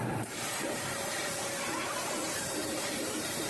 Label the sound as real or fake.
fake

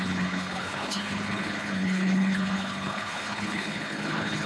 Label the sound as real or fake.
fake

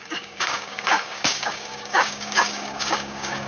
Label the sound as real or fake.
fake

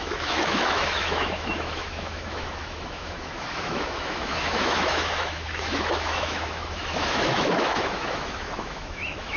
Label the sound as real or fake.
fake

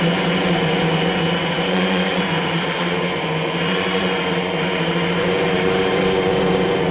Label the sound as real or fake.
fake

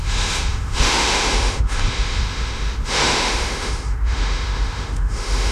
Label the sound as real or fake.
fake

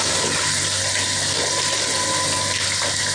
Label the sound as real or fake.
real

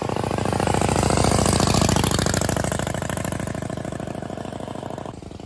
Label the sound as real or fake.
real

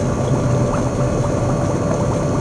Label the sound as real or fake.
real